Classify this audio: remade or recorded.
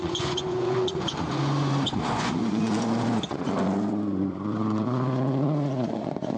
remade